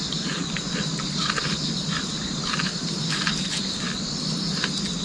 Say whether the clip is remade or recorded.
recorded